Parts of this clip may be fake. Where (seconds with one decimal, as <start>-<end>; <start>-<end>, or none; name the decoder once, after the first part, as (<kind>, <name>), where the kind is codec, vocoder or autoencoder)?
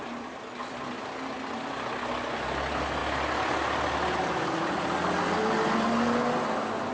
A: none